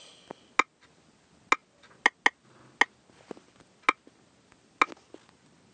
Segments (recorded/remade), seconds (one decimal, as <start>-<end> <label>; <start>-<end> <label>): 0.0-5.7 recorded